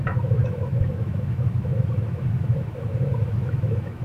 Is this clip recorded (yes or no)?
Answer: no